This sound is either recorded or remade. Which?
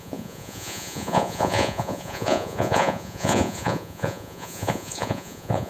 remade